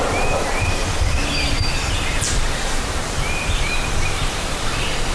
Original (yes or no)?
no